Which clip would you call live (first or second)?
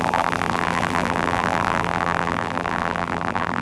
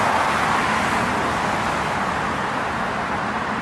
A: second